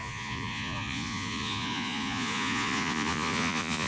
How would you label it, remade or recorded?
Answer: remade